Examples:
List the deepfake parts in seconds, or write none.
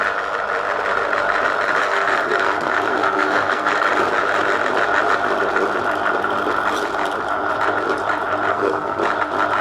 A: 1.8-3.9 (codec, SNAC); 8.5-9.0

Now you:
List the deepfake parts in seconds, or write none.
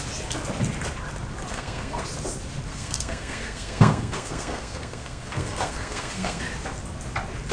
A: 1.5-2.0 (codec, SNAC); 2.7-6.4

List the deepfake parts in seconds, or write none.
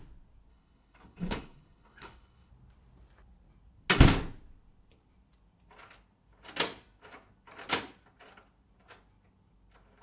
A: 0.5-2.5 (codec, HILCodec)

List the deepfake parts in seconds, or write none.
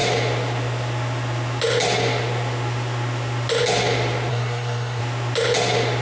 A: 4.3-5.0 (codec, SNAC)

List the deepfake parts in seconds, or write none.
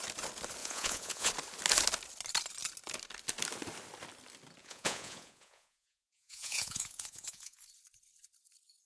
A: 0.6-1.3 (vocoder, Vocos); 4.6-7.6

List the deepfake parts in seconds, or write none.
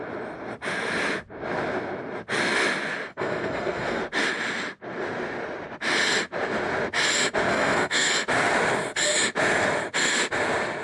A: 3.1-4.0 (codec, SNAC); 7.5-8.1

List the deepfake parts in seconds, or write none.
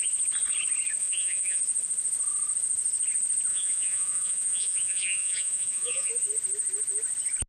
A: 1.0-1.6 (vocoder, Vocos); 3.5-6.1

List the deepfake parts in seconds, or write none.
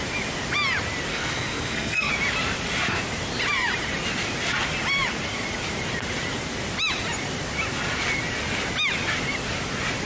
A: 1.1-2.1 (codec, SNAC)